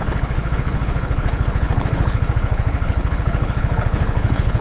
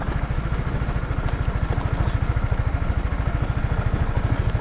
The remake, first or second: first